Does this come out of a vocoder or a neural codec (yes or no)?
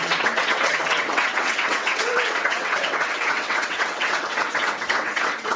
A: yes